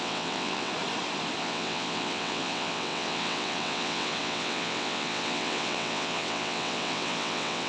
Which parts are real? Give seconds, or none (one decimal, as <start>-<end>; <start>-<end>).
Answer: 0.7-1.4